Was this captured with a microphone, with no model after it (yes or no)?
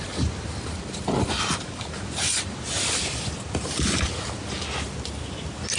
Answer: yes